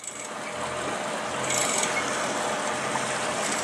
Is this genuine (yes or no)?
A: yes